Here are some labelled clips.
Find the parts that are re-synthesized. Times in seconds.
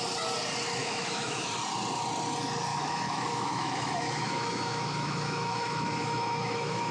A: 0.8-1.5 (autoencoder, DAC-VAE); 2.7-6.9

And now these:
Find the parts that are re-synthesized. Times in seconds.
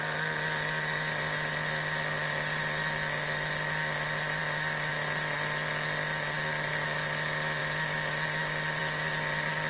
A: none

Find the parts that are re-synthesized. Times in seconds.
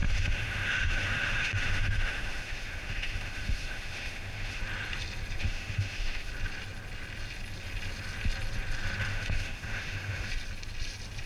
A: 0.0-4.6 (autoencoder, DAC-VAE); 5.4-6.3; 9.1-10.3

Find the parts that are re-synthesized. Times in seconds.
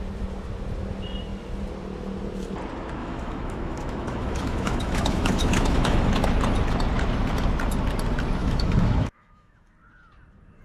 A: 3.0-6.3 (autoencoder, DAC-VAE); 8.4-9.7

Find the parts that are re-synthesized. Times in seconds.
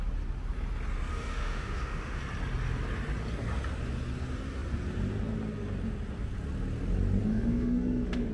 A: 1.1-2.2 (autoencoder, DAC-VAE); 7.3-8.3